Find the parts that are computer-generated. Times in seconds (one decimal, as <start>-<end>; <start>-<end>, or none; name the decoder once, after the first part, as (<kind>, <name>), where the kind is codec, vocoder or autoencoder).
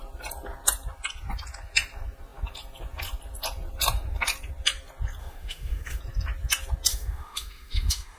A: 5.2-6.0 (autoencoder, DAC-VAE); 6.9-8.2